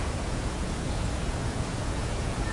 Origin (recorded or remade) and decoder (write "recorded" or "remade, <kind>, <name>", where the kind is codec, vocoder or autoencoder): remade, vocoder, Vocos